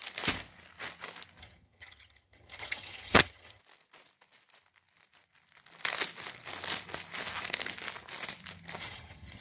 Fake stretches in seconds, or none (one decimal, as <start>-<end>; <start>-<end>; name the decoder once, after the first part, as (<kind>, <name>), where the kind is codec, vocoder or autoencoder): 1.4-3.6 (vocoder, HiFi-GAN); 8.8-9.4